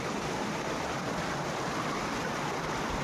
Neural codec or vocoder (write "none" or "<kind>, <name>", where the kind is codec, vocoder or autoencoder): none